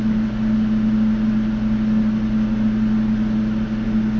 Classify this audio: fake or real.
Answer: real